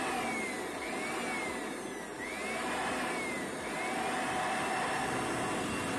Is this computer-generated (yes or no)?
no